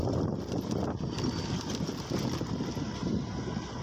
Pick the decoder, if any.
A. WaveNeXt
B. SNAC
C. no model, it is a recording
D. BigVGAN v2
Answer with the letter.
C